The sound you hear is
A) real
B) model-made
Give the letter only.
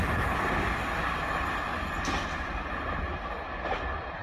A